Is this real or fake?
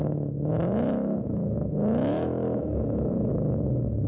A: fake